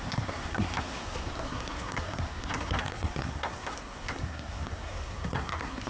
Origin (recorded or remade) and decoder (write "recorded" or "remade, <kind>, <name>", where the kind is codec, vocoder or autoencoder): remade, codec, SNAC